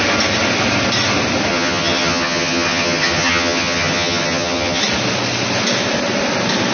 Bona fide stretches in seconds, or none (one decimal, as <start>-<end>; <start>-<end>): 0.0-1.5; 4.8-6.7